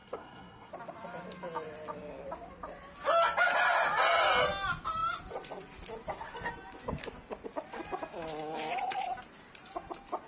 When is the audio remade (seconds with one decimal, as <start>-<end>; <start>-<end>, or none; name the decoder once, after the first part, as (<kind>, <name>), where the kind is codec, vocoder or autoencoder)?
0.0-0.7 (codec, SNAC)